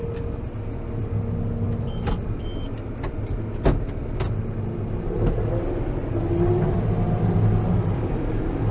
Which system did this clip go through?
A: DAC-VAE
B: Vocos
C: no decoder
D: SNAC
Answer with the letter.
C